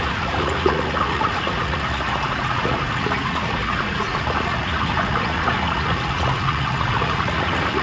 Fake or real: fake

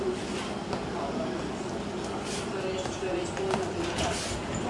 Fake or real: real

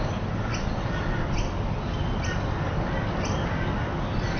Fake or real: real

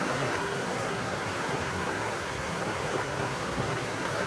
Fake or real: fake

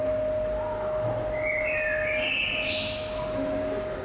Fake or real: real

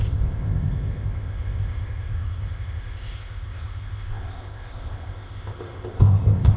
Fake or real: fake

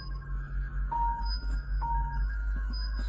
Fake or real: fake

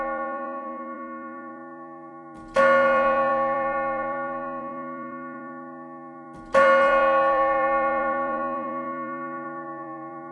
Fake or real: fake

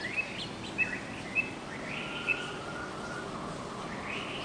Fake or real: real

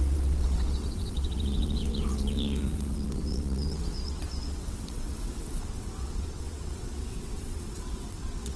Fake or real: fake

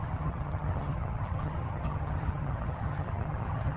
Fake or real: fake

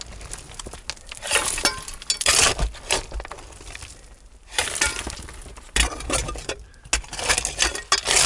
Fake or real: real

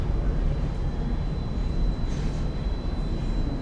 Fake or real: fake